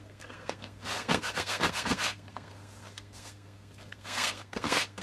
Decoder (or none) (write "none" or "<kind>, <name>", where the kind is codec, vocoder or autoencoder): codec, SNAC